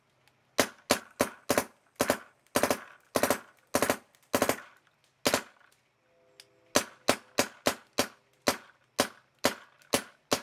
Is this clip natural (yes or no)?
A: yes